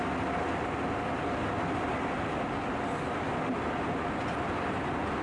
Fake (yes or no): no